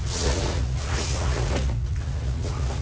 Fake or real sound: fake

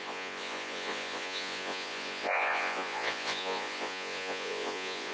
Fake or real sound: fake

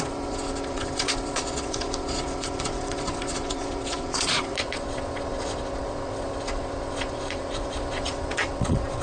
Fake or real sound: fake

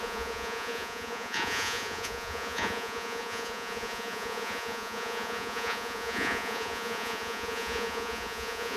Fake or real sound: fake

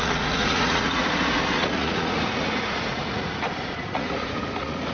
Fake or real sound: fake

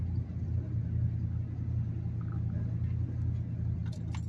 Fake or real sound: real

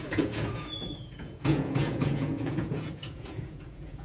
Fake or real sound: fake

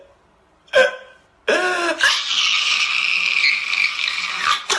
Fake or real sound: real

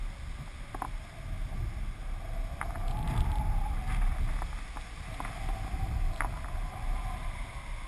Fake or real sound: real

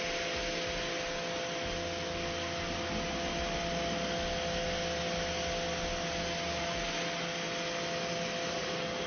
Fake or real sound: real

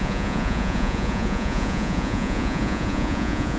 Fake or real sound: fake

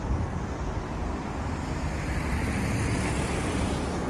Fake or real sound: real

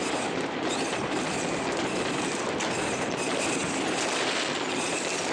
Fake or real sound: real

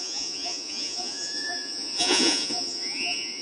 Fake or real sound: fake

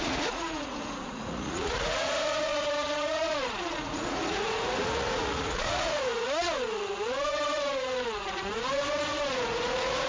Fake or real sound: fake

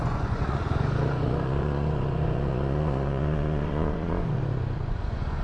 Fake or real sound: fake